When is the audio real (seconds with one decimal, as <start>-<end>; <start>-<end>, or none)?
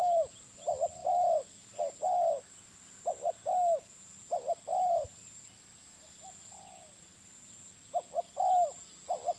0.0-4.7; 6.0-9.4